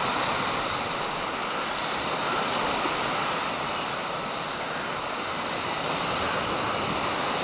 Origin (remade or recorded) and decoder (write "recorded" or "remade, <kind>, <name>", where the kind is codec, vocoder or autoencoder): recorded